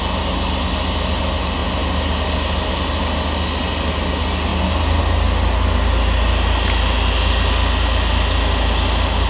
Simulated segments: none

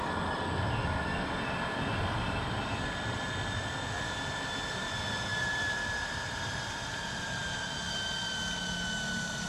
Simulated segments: 5.3-7.8 (vocoder, BigVGAN v2)

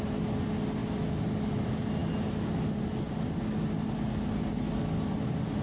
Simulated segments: none